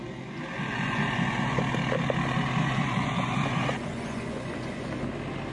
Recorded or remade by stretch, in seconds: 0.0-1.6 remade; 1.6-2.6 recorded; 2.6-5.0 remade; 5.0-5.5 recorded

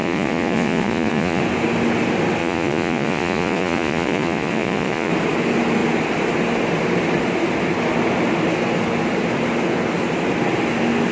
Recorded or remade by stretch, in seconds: 0.0-1.4 remade; 1.4-2.4 recorded; 2.4-5.1 remade; 5.1-11.1 recorded